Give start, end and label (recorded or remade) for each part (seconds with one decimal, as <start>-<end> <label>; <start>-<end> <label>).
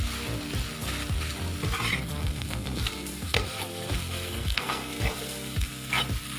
0.0-2.2 recorded; 2.2-6.0 remade; 6.0-6.4 recorded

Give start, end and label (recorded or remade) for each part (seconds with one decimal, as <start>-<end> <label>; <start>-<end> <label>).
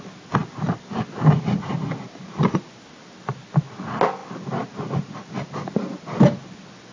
0.0-6.9 recorded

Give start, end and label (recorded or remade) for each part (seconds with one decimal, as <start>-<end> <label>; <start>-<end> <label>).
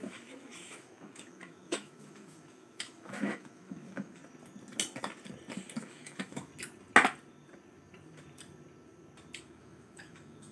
0.0-4.2 remade; 4.2-5.8 recorded; 5.8-6.5 remade; 6.5-9.4 recorded; 9.4-10.5 remade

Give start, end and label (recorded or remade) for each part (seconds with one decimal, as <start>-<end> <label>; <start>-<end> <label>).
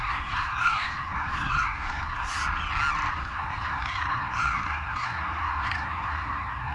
0.0-2.4 remade; 2.4-3.1 recorded; 3.1-6.7 remade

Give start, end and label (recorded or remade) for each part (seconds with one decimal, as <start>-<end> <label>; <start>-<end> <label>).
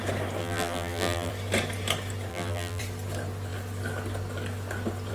0.0-0.4 recorded; 0.4-1.3 remade; 1.3-2.3 recorded; 2.3-2.8 remade; 2.8-5.1 recorded